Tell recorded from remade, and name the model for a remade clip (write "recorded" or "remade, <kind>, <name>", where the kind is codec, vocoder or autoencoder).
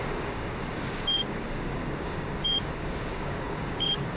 remade, codec, DAC